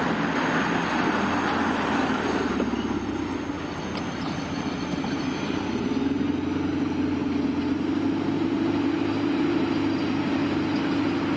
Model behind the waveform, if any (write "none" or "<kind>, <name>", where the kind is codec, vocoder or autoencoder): none